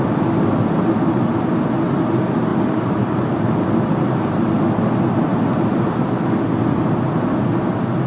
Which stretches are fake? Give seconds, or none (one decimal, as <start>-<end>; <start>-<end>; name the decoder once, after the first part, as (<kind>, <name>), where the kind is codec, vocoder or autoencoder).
2.5-3.5 (vocoder, BigVGAN v2); 5.3-5.9